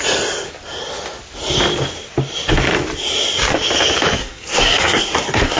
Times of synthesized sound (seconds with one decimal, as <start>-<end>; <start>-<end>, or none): 4.2-5.6